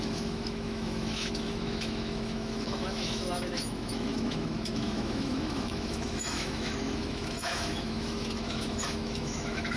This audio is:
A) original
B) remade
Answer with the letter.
B